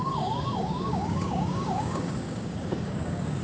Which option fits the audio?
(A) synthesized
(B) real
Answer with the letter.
A